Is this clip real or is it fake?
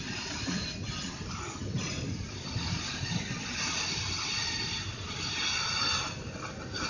real